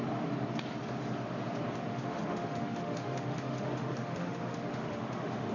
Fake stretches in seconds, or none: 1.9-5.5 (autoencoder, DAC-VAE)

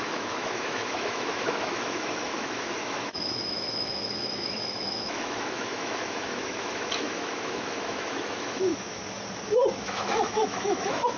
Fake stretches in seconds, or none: 0.0-9.0 (autoencoder, DAC-VAE); 9.8-11.2

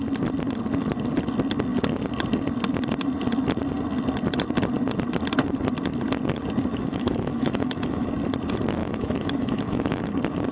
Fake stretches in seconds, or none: 6.7-8.1 (autoencoder, DAC-VAE); 8.8-10.0

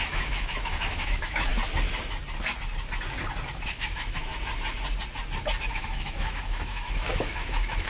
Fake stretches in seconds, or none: 0.0-1.5 (autoencoder, DAC-VAE); 3.7-4.3; 5.7-7.9

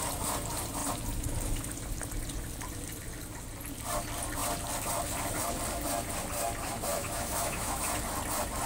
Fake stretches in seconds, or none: 6.9-7.8 (autoencoder, DAC-VAE)

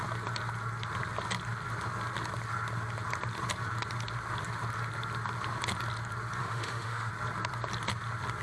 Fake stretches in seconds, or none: 6.4-7.1 (autoencoder, DAC-VAE)

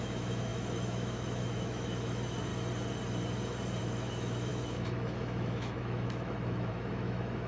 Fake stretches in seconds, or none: 0.0-2.5 (autoencoder, DAC-VAE); 3.8-7.5

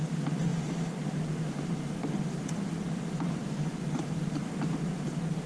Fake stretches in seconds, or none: none